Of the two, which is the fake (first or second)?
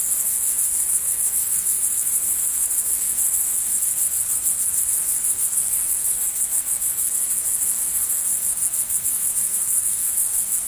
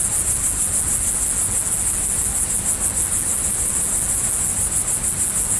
first